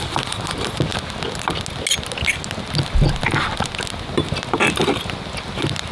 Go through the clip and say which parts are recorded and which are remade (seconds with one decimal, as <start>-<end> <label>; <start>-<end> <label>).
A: 0.0-5.9 recorded